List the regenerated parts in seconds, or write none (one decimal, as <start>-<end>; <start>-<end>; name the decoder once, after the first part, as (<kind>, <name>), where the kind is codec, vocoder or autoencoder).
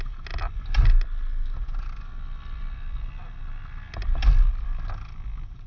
none